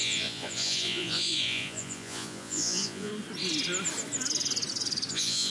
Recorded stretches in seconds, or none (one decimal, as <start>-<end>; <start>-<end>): 3.1-5.1